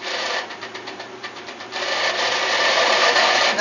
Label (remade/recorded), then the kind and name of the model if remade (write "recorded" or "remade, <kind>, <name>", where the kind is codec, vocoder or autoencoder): remade, vocoder, BigVGAN v2